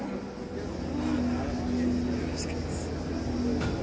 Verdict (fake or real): real